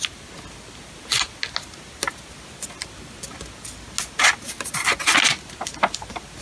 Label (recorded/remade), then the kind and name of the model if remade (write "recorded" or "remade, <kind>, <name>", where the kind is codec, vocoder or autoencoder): recorded